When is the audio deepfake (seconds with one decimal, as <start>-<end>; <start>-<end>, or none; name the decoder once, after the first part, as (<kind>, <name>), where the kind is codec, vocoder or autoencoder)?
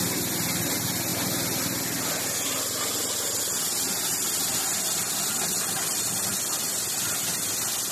none